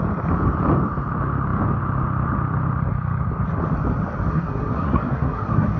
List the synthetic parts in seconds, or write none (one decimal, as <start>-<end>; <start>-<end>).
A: 4.3-5.8